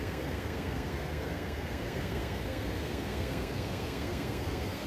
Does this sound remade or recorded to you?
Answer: remade